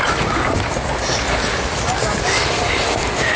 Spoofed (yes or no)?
no